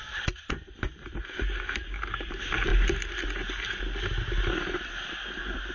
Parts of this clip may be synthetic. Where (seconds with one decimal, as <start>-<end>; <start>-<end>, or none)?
0.0-2.7; 4.4-5.7